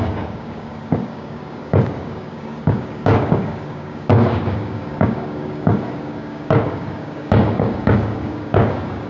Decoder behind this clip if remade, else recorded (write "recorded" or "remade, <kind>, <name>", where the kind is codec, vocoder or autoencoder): remade, codec, DAC